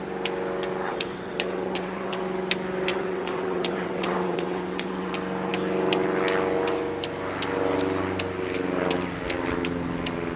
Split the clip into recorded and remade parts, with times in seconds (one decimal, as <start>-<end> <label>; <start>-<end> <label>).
0.0-0.9 recorded; 0.9-2.2 remade; 2.2-2.9 recorded; 2.9-5.1 remade; 5.1-10.4 recorded